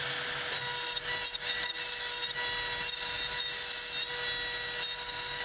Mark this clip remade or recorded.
recorded